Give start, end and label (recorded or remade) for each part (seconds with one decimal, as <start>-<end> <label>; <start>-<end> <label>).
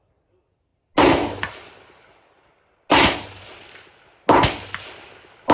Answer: 0.0-5.5 recorded